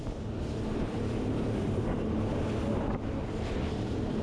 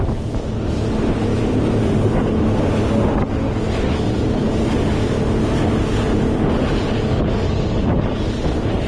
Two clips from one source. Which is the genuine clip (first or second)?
second